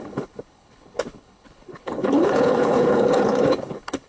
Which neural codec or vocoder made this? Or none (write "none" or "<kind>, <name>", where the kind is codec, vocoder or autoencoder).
codec, HILCodec